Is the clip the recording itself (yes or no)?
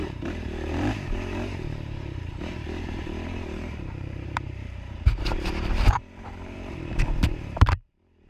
no